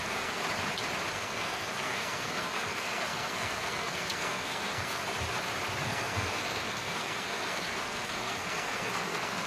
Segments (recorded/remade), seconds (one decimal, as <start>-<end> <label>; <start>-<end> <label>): 0.0-0.4 remade; 0.4-1.1 recorded; 1.1-5.0 remade; 5.0-5.8 recorded; 5.8-9.5 remade